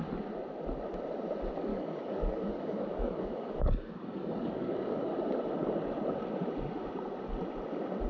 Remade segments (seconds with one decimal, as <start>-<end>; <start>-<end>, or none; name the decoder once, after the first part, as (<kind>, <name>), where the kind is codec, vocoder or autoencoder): 1.7-5.2 (codec, DAC)